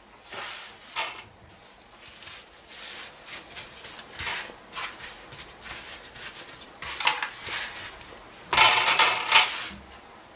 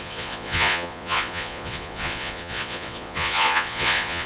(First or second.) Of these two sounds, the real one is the first